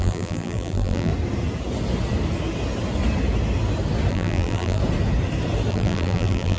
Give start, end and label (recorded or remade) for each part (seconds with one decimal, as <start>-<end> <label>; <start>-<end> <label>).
0.0-1.1 remade; 1.1-4.1 recorded; 4.1-4.8 remade; 4.8-5.7 recorded; 5.7-6.6 remade